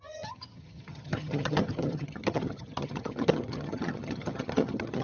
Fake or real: fake